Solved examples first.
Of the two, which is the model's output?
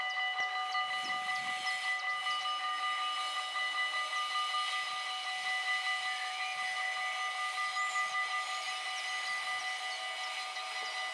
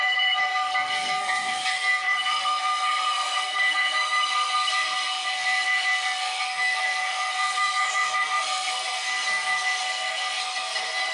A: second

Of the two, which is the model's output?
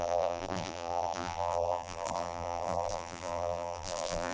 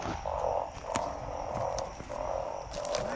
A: first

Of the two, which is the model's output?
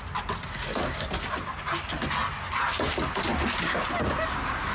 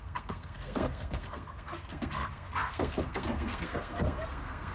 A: second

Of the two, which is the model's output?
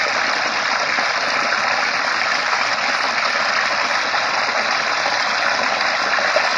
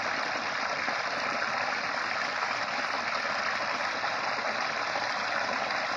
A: second